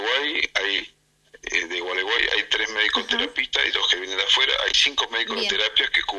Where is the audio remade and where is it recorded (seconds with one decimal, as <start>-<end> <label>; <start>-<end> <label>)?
0.0-6.2 recorded